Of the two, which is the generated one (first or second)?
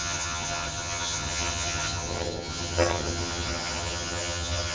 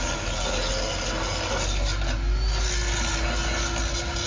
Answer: first